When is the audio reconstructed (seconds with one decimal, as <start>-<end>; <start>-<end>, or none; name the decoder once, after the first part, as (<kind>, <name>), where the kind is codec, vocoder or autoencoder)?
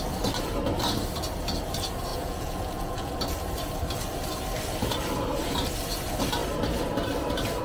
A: 2.1-3.1 (vocoder, Vocos)